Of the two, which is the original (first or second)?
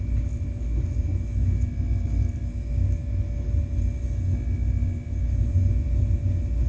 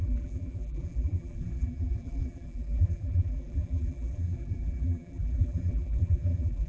first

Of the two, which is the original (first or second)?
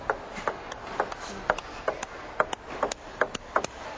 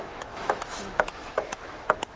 first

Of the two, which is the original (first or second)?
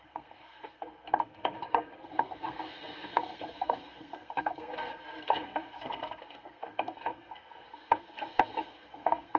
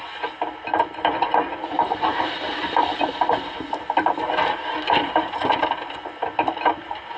second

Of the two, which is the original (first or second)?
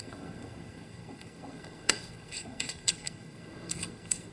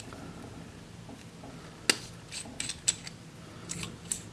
second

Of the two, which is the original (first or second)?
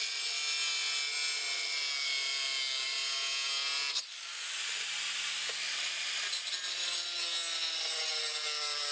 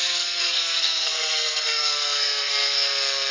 first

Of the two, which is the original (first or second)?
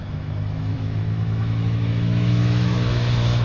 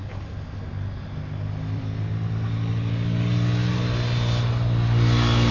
second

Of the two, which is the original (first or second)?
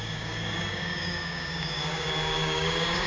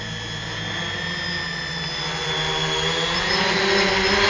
second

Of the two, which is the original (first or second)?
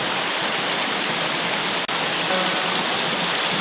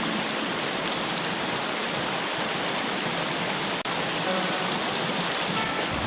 first